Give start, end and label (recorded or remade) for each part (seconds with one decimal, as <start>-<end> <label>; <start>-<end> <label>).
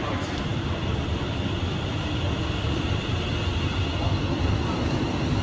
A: 0.0-5.4 recorded